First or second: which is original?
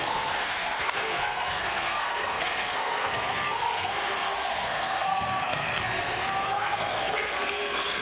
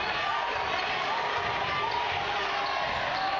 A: second